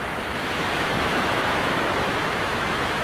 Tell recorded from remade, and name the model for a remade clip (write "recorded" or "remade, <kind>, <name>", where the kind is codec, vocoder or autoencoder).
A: remade, autoencoder, DAC-VAE